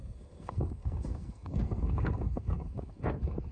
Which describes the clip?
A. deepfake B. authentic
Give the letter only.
A